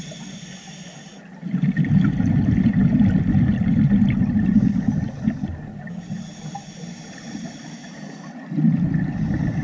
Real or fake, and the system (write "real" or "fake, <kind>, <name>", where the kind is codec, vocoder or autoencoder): real